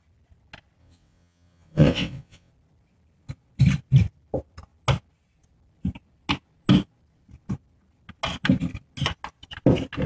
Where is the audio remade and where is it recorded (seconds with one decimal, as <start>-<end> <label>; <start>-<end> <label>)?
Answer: 0.0-0.8 recorded; 0.8-2.5 remade; 2.5-10.1 recorded